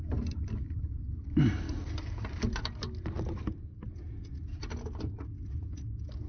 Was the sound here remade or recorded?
recorded